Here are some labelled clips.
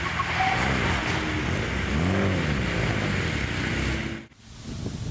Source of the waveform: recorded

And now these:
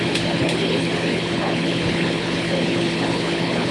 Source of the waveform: remade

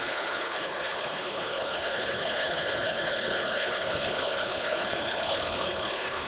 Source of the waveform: remade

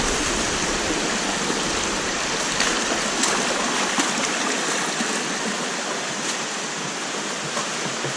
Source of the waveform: recorded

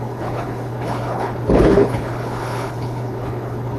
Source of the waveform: remade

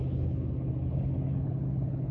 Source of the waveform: remade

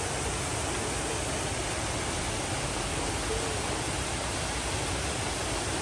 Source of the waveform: recorded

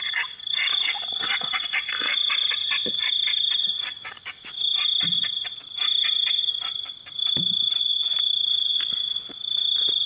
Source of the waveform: recorded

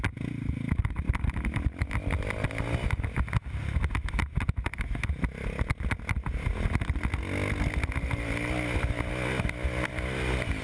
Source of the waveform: recorded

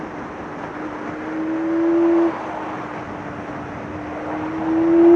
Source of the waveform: recorded